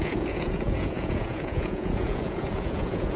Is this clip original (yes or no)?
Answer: no